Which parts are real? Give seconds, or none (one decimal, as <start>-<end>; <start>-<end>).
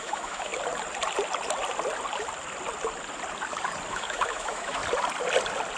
0.5-3.9; 4.8-5.8